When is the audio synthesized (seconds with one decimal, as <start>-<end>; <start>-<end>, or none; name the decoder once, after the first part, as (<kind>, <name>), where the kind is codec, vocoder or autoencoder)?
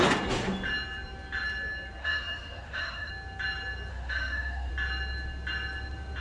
2.0-3.1 (autoencoder, DAC-VAE); 3.9-4.7